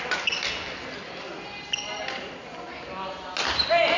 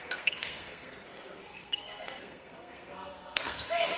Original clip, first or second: first